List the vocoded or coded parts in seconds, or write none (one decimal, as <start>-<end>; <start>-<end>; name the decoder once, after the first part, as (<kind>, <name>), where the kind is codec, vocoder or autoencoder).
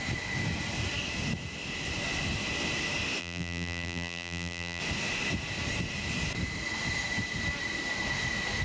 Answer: 3.2-4.8 (vocoder, BigVGAN v2)